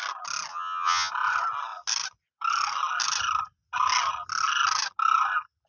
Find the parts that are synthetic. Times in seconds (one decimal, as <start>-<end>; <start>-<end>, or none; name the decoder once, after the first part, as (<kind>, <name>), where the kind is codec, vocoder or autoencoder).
0.5-1.1 (vocoder, HiFi-GAN)